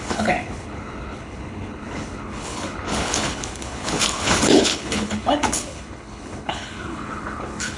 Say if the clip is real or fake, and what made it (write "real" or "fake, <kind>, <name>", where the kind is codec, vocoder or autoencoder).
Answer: fake, codec, HILCodec